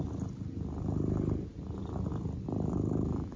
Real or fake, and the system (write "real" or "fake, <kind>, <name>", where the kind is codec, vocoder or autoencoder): real